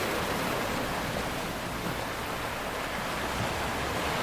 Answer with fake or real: real